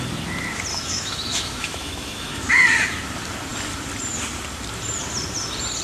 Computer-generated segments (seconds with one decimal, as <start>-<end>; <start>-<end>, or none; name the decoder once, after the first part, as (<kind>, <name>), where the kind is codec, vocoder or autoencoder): 0.7-2.5 (autoencoder, DAC-VAE)